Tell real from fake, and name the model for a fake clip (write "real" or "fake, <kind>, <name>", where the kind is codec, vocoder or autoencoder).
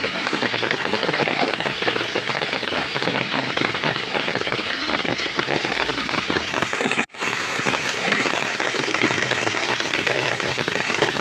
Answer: fake, codec, SNAC